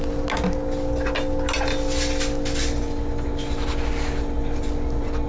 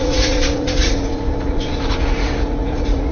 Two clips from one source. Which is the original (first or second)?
first